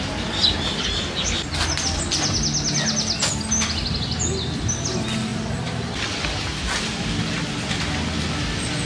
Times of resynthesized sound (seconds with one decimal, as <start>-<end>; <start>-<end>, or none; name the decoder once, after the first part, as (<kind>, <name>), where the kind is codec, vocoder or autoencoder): none